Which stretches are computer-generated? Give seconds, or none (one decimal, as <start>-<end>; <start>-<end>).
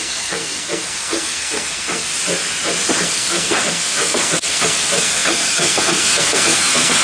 0.0-2.1; 3.0-7.0